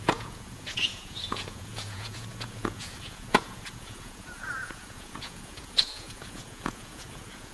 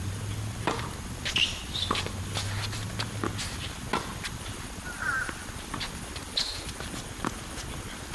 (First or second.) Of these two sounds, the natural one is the second